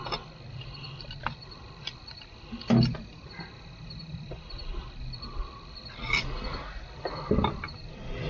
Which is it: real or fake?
real